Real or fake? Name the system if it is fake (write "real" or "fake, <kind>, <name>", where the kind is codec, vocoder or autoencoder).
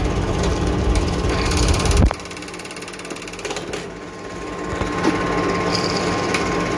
real